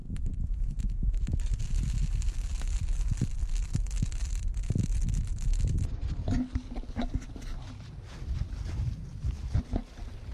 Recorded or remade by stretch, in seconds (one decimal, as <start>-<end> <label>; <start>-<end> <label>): 0.0-0.7 remade; 0.7-10.3 recorded